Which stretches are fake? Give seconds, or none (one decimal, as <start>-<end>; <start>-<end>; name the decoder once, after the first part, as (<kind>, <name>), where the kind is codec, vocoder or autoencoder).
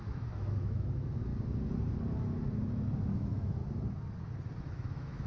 0.0-1.3 (autoencoder, DAC-VAE); 3.1-3.6; 4.6-5.3